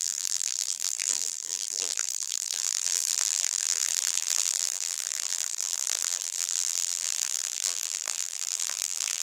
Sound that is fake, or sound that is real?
fake